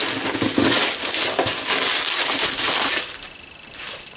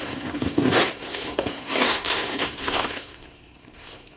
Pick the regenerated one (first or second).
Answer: second